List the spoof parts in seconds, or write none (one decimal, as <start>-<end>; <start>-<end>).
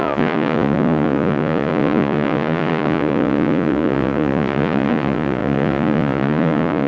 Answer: 0.0-6.9